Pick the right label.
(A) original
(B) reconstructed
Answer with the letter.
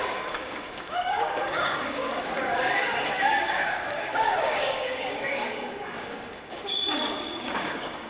B